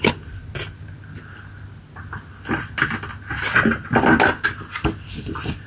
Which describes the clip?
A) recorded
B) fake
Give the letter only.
A